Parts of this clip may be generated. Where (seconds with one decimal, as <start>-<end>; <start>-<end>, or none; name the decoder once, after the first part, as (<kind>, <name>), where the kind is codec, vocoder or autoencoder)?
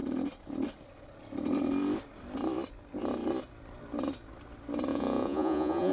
4.9-5.9 (vocoder, Vocos)